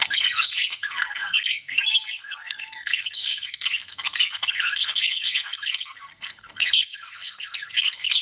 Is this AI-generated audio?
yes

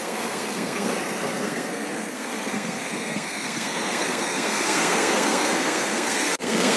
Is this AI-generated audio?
yes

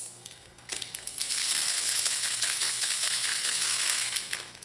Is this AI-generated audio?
yes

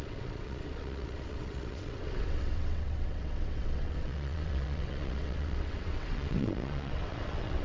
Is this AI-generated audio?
yes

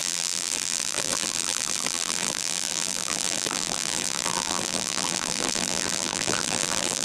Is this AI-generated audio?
yes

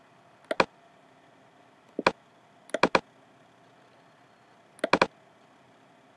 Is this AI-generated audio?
no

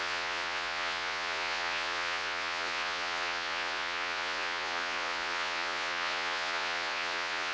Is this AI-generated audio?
yes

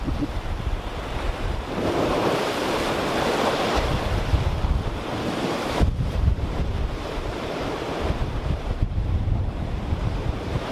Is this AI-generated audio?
yes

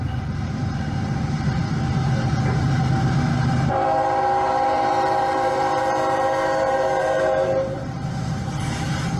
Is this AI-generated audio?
yes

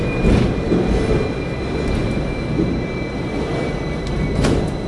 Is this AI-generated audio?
no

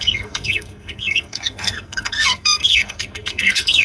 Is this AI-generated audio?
yes